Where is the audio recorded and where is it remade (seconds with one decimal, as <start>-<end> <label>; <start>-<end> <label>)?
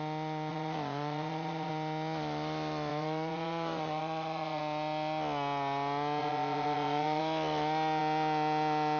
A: 0.0-0.5 recorded; 0.5-1.7 remade; 1.7-2.9 recorded; 2.9-4.6 remade; 4.6-6.2 recorded; 6.2-7.2 remade; 7.2-9.0 recorded